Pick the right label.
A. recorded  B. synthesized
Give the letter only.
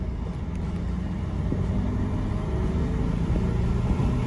A